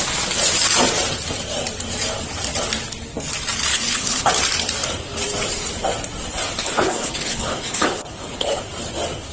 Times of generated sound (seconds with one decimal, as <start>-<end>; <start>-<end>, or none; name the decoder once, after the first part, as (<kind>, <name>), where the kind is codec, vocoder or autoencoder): 3.7-4.3 (codec, HILCodec); 6.6-8.6